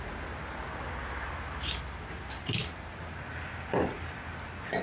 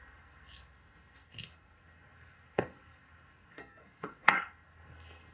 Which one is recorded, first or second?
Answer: first